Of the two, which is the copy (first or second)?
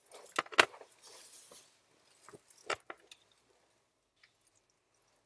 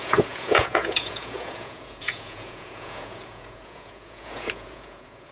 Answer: second